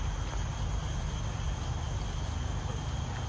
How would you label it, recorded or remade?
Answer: recorded